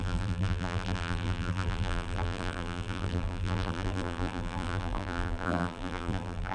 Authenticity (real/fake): fake